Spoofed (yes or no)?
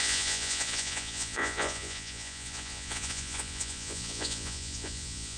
yes